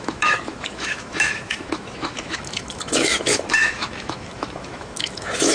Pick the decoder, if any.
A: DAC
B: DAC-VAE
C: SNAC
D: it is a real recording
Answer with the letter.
B